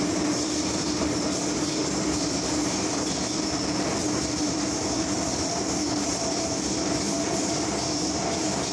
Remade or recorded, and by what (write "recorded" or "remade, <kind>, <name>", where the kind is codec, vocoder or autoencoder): recorded